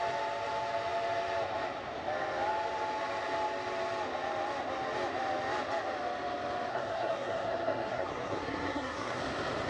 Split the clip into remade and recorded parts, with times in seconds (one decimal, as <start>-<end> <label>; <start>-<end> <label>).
0.0-6.7 recorded; 6.7-9.2 remade; 9.2-9.7 recorded